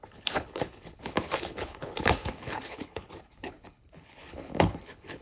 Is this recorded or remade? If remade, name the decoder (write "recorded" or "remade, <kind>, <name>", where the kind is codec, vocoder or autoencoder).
remade, codec, HILCodec